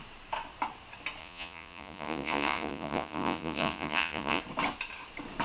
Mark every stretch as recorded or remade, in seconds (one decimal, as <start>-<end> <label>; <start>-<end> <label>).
0.0-1.2 recorded; 1.2-4.4 remade; 4.4-5.4 recorded